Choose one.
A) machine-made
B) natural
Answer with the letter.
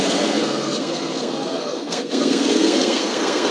A